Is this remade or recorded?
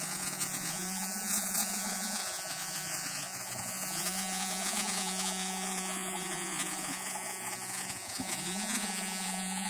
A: remade